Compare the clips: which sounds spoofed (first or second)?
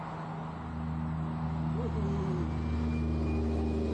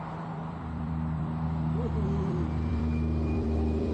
second